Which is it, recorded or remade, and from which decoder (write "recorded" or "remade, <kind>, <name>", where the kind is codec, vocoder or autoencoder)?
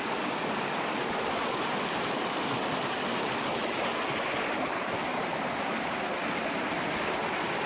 recorded